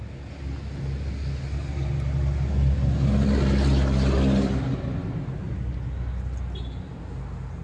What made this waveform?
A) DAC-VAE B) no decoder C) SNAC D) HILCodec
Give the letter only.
B